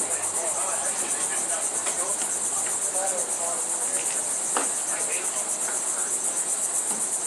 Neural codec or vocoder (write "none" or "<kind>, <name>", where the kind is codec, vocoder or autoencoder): none